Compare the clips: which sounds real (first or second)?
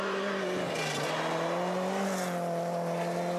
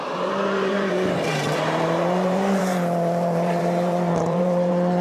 first